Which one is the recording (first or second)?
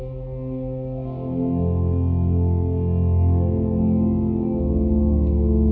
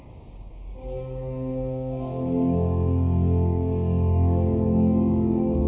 first